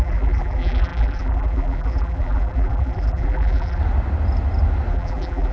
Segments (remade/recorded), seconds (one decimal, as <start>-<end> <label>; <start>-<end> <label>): 0.0-3.8 remade; 3.8-4.9 recorded; 4.9-5.5 remade